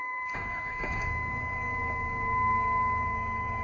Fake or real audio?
fake